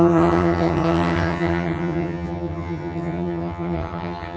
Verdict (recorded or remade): remade